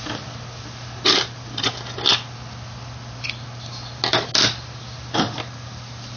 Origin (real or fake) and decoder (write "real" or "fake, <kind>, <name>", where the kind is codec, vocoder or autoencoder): real